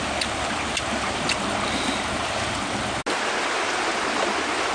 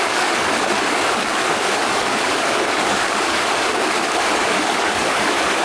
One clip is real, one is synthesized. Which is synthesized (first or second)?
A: second